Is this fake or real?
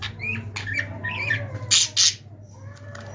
real